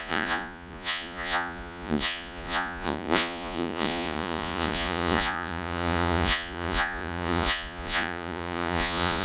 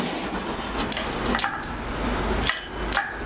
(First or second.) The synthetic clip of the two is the first